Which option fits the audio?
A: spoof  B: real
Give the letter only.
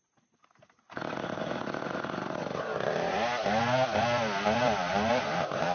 A